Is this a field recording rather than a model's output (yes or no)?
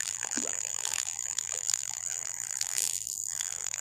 no